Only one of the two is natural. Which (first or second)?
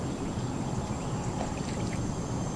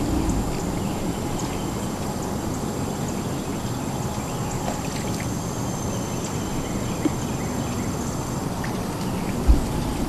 second